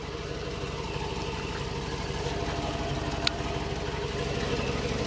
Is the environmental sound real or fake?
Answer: real